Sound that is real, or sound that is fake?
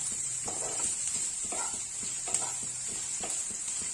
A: fake